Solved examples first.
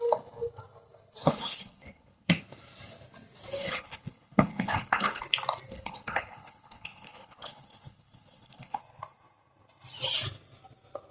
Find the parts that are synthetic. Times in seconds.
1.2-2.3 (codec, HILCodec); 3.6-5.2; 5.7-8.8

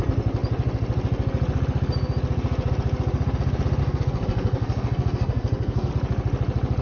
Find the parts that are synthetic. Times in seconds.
3.8-5.9 (codec, SNAC)

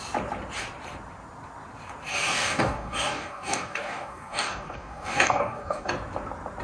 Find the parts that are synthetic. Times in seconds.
2.1-5.9 (codec, DAC)

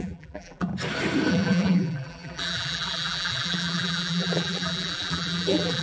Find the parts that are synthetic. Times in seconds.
0.0-0.7 (vocoder, BigVGAN v2); 1.3-5.8